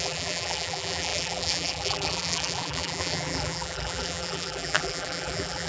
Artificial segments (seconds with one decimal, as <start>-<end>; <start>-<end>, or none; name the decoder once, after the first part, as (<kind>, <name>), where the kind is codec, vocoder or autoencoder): 0.0-5.7 (vocoder, BigVGAN v2)